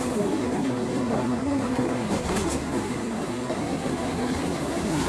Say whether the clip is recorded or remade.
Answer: remade